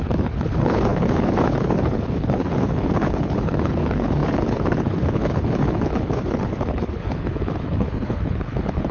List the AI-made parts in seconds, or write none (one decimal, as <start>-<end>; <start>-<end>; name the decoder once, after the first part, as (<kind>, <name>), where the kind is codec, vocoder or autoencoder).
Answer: 0.0-8.9 (codec, HILCodec)